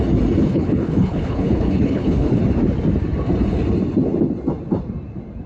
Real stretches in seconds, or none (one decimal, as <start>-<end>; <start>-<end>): 0.0-0.4; 2.4-5.5